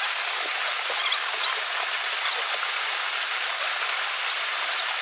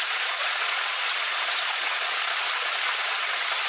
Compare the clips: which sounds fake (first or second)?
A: second